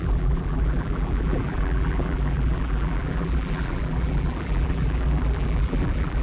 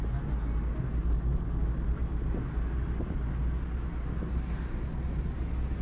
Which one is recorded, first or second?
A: second